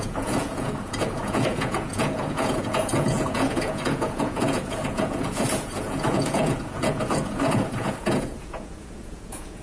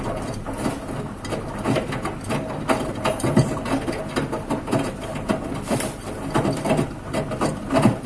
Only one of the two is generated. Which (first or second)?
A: first